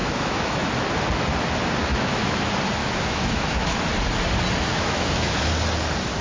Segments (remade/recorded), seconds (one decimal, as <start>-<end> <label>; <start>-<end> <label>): 0.0-0.7 remade; 0.7-1.9 recorded; 1.9-2.4 remade; 2.4-2.8 recorded; 2.8-3.8 remade; 3.8-4.7 recorded; 4.7-5.4 remade; 5.4-6.2 recorded